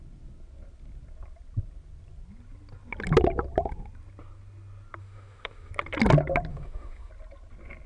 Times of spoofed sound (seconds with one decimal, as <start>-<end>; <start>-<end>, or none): 5.0-5.7; 6.5-7.1